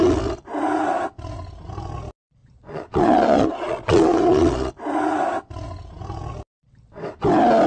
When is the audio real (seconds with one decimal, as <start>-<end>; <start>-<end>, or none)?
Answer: 0.0-2.4; 4.7-7.7